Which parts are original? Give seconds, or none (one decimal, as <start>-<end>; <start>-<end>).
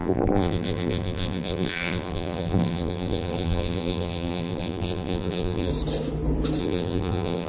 5.7-6.6